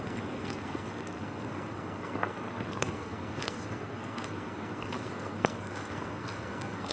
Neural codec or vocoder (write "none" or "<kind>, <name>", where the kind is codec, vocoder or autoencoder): codec, SNAC